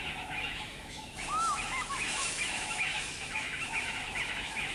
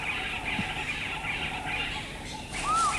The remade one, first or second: first